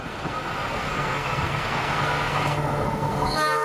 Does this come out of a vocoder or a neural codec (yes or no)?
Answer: yes